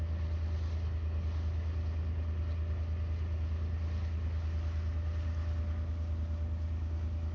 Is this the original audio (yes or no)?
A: yes